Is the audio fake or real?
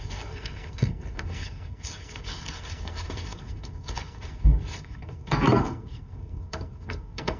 fake